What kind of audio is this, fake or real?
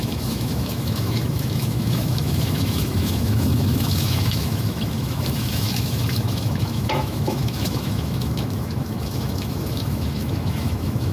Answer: fake